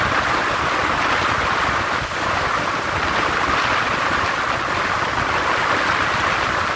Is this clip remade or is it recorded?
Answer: recorded